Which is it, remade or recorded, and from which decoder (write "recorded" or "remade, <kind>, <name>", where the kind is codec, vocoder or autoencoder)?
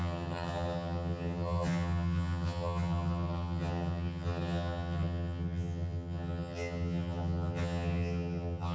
remade, vocoder, HiFi-GAN